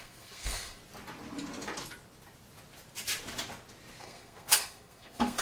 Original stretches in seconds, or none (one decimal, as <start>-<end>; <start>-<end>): 0.8-4.0